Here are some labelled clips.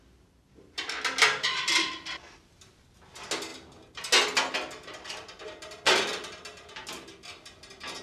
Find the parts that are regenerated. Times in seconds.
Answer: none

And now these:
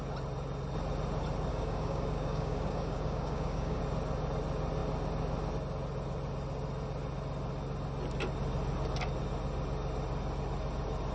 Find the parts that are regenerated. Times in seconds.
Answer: 1.5-3.8 (codec, DAC)

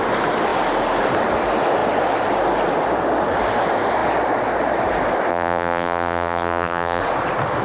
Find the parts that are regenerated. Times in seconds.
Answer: 5.3-7.0 (vocoder, BigVGAN v2)